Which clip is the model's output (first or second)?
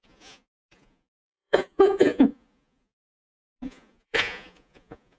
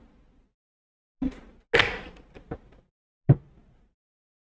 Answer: first